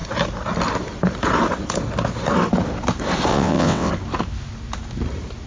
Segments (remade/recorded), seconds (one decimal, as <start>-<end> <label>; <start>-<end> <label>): 0.0-3.3 recorded; 3.3-3.9 remade; 3.9-5.5 recorded